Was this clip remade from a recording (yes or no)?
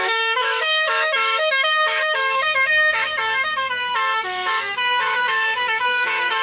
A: yes